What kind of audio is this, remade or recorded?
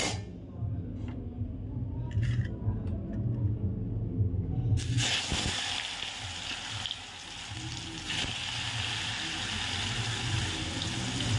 recorded